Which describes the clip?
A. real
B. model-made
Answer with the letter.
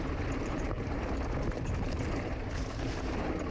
B